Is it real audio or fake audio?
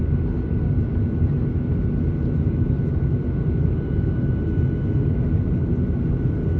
real